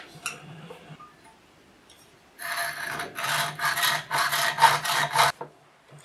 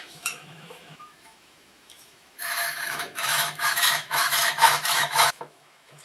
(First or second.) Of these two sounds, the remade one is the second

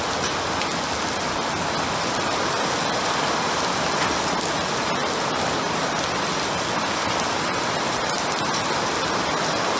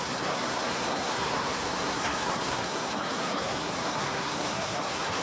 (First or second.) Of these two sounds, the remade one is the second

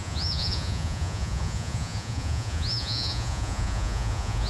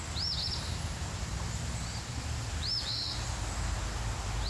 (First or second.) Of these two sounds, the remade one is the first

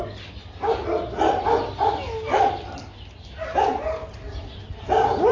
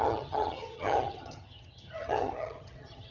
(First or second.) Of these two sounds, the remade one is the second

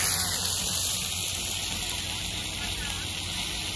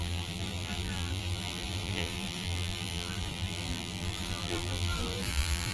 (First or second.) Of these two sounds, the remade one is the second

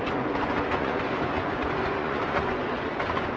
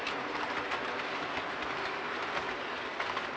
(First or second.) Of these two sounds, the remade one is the first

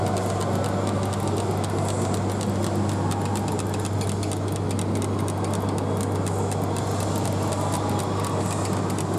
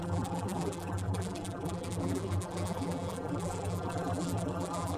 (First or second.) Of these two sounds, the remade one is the second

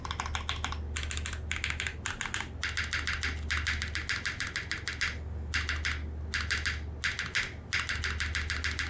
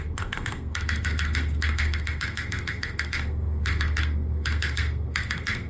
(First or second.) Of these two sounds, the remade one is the second